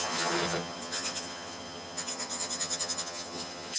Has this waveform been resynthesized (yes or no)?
yes